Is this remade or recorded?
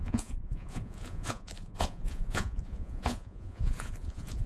remade